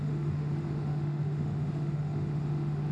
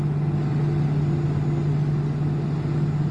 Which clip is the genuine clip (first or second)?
second